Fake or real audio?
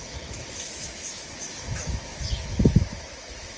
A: fake